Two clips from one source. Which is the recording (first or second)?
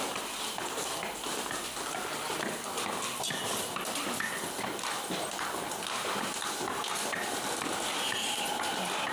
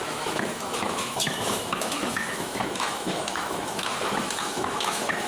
first